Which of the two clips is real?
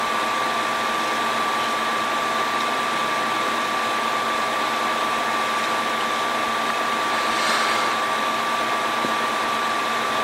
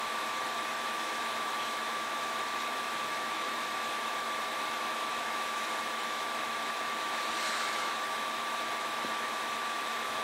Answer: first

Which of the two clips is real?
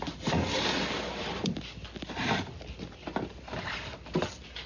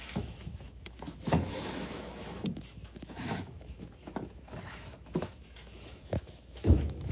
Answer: first